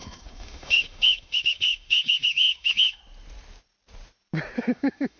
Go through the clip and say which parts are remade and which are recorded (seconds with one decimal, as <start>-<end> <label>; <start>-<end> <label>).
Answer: 0.0-3.0 remade; 3.0-4.6 recorded; 4.6-5.2 remade